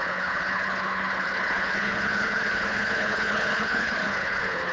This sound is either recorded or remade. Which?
remade